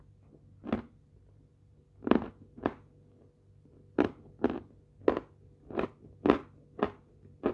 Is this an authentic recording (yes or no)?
yes